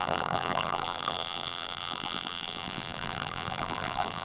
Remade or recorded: remade